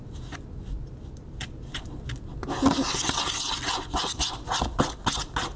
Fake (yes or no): no